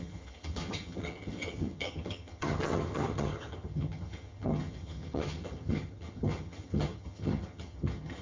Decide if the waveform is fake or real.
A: fake